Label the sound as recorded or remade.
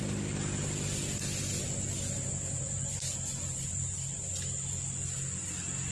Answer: recorded